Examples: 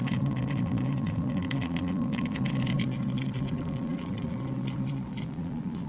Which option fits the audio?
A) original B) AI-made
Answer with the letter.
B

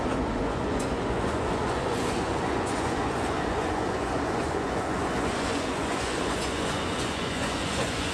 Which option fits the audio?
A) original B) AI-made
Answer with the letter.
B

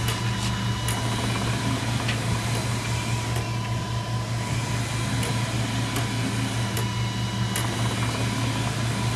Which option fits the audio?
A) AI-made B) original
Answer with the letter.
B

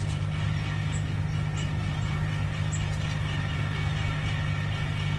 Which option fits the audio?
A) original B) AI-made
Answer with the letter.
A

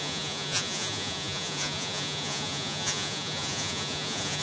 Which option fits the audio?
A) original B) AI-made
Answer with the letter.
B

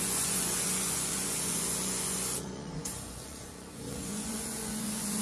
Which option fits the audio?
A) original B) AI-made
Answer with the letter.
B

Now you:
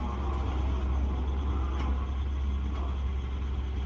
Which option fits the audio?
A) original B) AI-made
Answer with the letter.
A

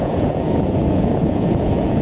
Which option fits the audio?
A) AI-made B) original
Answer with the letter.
A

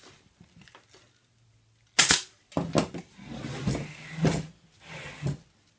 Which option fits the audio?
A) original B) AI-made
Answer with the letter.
A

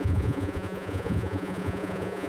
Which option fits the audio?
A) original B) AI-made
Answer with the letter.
B